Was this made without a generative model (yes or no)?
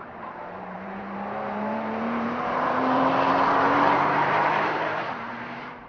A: no